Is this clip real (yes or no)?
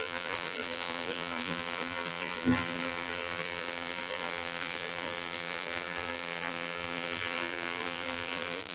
no